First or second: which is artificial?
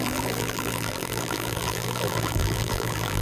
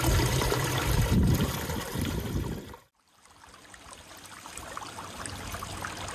first